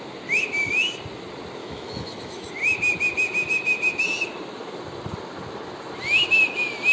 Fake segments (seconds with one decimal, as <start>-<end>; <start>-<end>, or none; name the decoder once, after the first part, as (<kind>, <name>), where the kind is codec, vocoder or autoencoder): 1.6-2.5 (autoencoder, DAC-VAE)